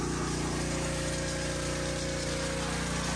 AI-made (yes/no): no